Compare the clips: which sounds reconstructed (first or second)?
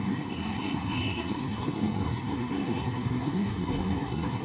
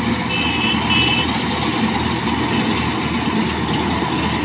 first